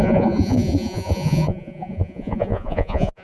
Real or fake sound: fake